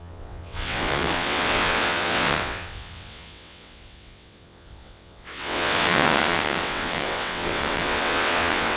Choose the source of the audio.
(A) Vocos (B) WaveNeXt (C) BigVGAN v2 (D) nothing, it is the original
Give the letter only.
B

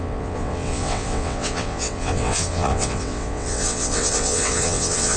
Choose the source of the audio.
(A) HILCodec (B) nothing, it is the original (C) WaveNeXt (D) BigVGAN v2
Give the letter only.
C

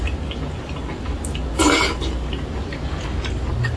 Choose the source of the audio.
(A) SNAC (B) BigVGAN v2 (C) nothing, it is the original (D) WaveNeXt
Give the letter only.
C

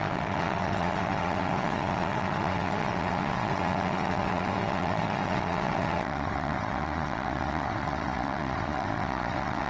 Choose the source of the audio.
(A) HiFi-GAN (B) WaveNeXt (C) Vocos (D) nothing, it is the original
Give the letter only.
B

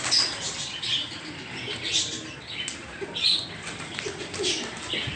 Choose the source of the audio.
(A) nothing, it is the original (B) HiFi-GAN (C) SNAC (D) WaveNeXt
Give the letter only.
A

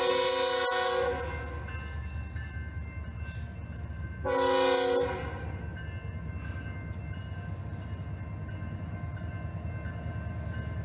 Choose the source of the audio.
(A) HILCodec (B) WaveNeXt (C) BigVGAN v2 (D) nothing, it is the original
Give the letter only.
D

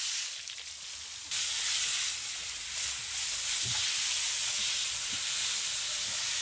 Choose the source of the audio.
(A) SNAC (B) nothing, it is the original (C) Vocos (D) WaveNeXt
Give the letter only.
B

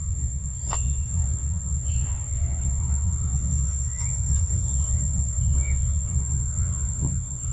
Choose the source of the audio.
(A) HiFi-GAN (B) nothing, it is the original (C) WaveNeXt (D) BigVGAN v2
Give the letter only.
C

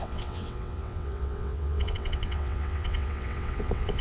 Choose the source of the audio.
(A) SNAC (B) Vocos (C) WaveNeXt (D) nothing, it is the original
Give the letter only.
C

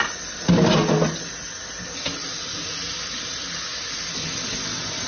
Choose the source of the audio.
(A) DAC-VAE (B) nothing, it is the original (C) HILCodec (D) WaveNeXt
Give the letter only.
B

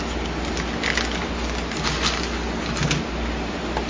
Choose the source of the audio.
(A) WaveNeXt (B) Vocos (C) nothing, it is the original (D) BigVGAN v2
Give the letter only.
C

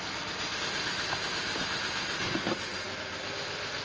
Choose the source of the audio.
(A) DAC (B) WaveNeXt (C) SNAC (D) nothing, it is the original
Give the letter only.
D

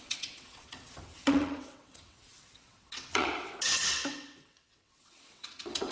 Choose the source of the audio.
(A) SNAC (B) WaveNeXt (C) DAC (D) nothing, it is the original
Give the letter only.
B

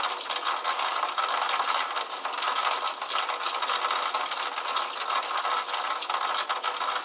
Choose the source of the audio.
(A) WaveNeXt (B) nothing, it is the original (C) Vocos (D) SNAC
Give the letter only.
B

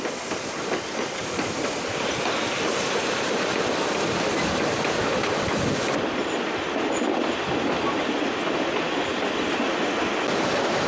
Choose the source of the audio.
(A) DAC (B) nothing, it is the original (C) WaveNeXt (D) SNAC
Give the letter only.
B